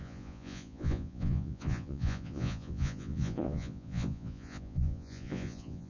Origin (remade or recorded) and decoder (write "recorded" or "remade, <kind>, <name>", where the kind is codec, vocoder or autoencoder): remade, vocoder, Vocos